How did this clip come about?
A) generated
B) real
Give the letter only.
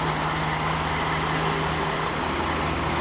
B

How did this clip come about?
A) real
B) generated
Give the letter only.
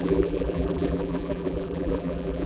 B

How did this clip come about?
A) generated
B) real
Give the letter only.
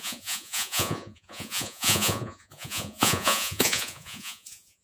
A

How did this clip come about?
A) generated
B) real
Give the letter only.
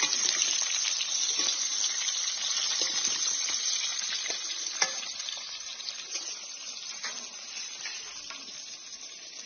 B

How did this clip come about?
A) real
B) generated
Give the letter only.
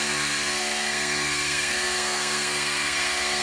B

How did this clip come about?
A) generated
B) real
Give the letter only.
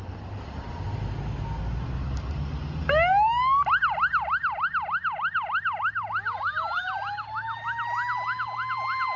B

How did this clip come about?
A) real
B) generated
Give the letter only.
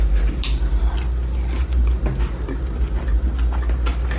A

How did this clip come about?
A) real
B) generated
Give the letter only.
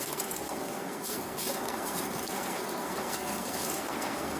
B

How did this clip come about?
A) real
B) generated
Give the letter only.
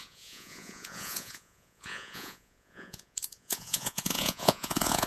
B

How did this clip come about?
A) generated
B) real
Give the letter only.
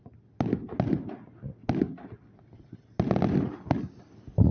B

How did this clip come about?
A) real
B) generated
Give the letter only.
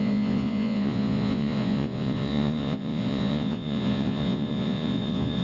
B